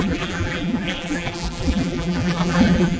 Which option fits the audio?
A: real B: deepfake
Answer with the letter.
B